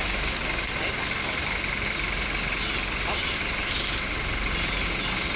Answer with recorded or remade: recorded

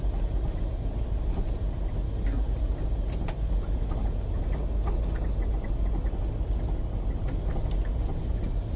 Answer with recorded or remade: recorded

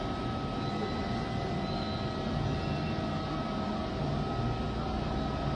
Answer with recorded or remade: recorded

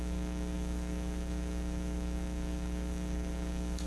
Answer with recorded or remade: remade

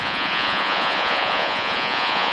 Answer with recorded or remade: remade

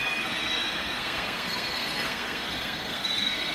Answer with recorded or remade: remade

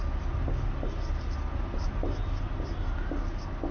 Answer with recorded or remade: recorded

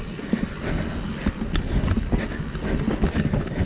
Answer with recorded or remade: recorded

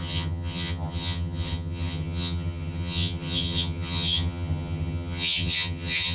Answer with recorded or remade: remade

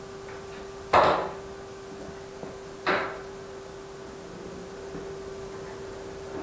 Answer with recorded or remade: recorded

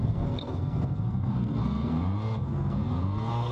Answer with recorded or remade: remade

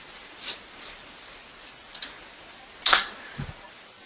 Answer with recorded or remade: recorded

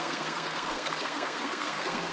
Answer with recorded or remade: remade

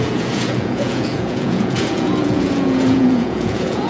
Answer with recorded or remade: remade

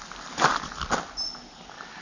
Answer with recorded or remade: recorded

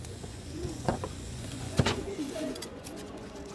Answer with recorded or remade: remade